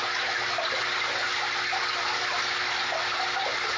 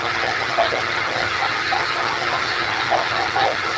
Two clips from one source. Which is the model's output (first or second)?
second